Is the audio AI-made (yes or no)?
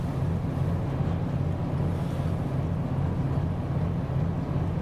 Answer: no